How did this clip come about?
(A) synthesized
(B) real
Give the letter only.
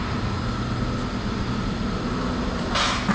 B